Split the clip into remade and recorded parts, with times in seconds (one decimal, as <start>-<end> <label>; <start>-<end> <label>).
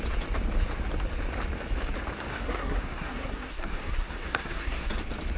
0.0-2.3 recorded; 2.3-4.9 remade; 4.9-5.4 recorded